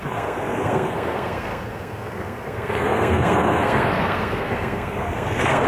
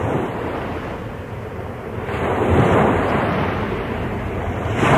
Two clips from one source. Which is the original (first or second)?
second